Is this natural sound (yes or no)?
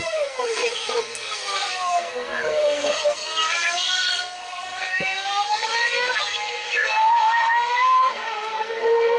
no